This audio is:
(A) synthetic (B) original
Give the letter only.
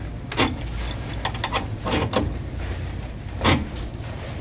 B